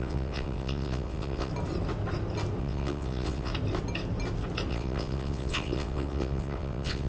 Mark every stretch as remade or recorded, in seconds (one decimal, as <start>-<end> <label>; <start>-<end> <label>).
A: 0.0-1.5 remade; 1.5-2.6 recorded; 2.6-3.5 remade; 3.5-4.7 recorded; 4.7-7.1 remade